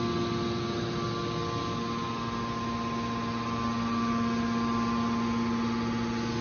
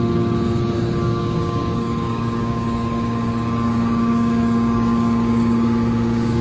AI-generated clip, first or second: second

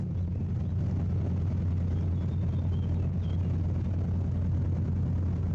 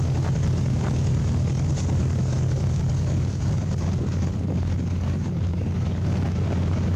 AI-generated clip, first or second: second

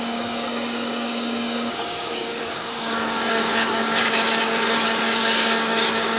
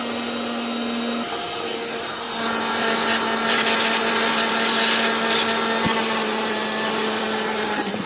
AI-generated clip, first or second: first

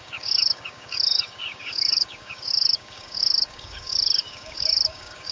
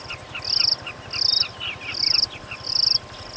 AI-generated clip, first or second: first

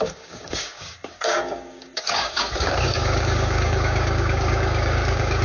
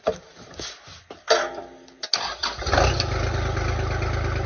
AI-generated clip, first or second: first